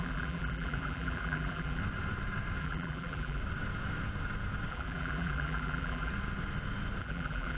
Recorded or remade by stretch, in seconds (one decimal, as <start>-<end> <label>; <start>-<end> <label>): 0.0-1.8 remade; 1.8-2.6 recorded; 2.6-3.4 remade; 3.4-4.7 recorded; 4.7-6.1 remade; 6.1-7.0 recorded; 7.0-7.6 remade